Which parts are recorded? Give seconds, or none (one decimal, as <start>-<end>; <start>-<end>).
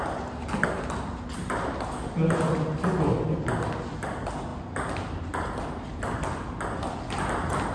0.0-7.7